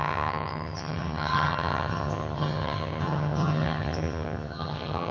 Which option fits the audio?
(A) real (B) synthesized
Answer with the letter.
B